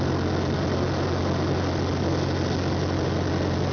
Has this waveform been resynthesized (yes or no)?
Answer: no